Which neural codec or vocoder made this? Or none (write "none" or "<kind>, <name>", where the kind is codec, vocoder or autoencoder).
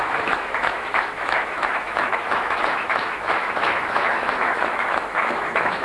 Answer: autoencoder, DAC-VAE